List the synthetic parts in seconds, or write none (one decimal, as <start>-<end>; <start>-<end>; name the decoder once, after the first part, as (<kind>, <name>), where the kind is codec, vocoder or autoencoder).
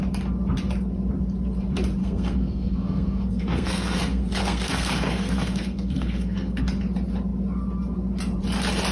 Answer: 2.0-6.6 (codec, SNAC)